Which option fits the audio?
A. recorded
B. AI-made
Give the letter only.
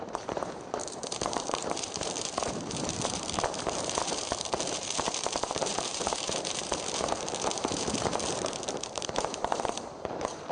B